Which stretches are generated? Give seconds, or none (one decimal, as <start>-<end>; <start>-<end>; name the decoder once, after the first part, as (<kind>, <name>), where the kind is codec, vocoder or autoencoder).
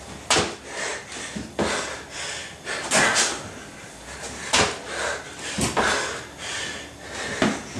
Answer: none